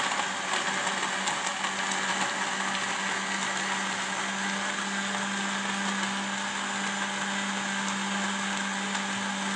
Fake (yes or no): no